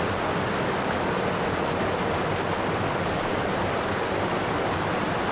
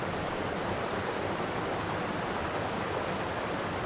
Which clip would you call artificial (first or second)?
second